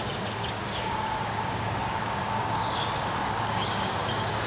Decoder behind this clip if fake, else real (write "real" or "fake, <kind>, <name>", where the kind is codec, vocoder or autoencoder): fake, codec, DAC